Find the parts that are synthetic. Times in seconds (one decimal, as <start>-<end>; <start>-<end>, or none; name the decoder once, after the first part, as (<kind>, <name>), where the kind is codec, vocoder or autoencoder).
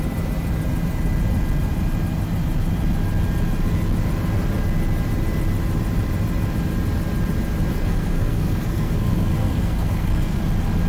7.7-10.4 (codec, SNAC)